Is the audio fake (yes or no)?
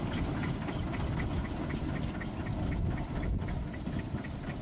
no